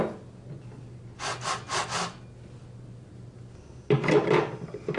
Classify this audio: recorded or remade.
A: recorded